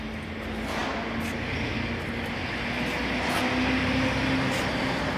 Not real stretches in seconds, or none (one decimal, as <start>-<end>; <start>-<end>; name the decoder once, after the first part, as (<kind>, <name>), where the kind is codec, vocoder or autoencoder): none